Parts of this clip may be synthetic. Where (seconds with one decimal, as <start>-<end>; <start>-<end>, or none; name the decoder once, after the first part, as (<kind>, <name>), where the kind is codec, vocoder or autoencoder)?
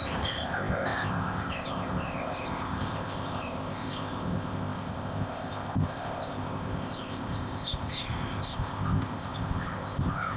0.0-10.4 (codec, ZipCodec)